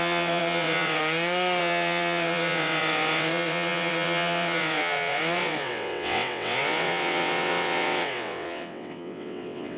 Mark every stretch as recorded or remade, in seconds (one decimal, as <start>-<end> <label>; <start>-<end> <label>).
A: 0.0-1.0 remade; 1.0-1.6 recorded; 1.6-9.8 remade